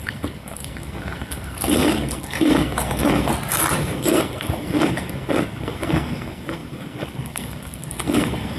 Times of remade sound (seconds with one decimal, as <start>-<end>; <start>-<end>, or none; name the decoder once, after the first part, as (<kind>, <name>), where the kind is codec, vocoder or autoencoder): 0.0-3.3 (codec, SNAC); 3.8-8.6